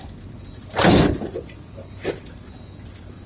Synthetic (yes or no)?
yes